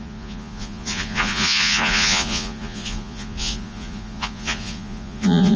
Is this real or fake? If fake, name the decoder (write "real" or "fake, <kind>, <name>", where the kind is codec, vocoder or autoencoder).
fake, vocoder, Vocos